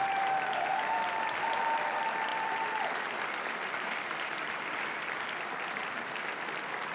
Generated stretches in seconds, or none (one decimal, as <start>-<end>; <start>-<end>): 0.7-1.4; 2.3-5.3